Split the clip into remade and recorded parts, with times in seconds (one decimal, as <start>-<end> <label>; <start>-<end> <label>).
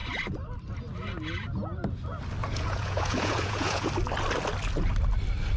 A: 0.0-2.4 recorded; 2.4-3.9 remade; 3.9-5.6 recorded